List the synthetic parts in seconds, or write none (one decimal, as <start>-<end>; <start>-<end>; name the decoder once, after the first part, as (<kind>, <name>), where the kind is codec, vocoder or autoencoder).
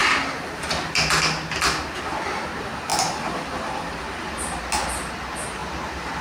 none